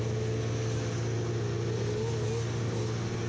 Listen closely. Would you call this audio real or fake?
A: real